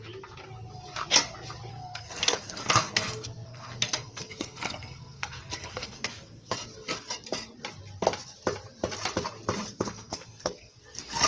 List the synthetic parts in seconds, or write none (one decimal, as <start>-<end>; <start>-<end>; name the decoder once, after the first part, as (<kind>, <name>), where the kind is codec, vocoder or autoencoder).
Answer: 1.7-6.5 (codec, SNAC); 9.7-11.3

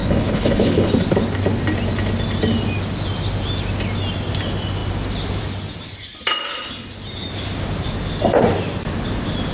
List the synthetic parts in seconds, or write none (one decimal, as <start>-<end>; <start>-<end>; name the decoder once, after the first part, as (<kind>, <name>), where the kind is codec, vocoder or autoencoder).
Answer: 0.0-0.9 (codec, HILCodec)

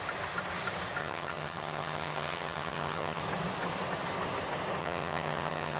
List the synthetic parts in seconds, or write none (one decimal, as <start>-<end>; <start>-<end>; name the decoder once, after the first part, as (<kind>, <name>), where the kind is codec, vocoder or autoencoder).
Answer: 1.0-3.2 (vocoder, HiFi-GAN); 4.8-5.8

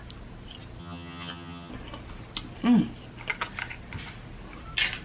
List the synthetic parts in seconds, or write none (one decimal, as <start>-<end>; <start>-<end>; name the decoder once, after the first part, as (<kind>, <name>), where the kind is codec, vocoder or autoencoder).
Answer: 0.8-1.7 (vocoder, HiFi-GAN)

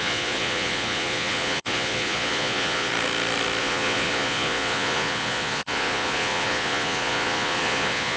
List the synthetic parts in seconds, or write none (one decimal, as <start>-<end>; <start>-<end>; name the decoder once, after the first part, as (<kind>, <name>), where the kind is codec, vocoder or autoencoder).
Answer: 0.0-2.9 (vocoder, Vocos); 3.6-8.2

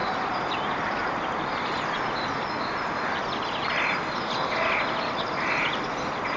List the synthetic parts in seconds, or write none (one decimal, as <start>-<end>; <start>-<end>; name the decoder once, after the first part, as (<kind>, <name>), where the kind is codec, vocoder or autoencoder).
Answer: none

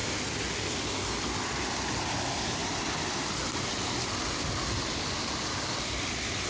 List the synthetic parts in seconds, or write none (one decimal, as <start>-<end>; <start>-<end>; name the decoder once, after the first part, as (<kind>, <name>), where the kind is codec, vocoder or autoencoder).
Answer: none

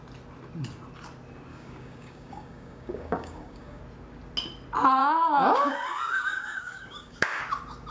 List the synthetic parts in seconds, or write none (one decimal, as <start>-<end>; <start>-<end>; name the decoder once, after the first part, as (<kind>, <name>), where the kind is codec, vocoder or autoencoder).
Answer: 1.5-3.8 (codec, DAC); 5.0-7.4